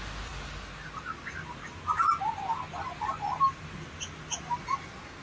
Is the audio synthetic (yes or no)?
no